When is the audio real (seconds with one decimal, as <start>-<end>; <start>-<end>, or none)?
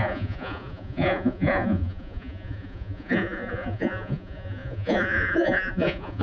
none